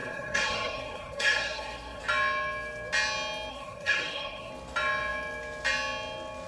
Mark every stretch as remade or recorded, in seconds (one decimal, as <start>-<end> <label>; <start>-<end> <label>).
0.0-2.0 remade; 2.0-3.5 recorded; 3.5-4.5 remade; 4.5-6.5 recorded